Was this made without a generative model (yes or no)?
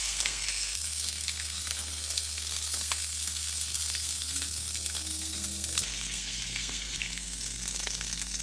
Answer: no